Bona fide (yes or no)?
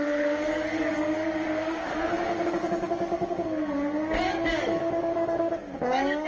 no